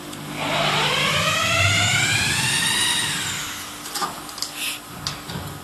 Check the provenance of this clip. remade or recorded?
recorded